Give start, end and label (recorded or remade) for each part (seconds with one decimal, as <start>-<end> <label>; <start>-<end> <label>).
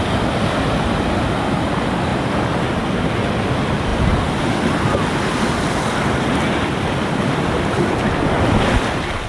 0.0-9.3 recorded